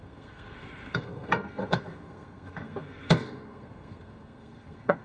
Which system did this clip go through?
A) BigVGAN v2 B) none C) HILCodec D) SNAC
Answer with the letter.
D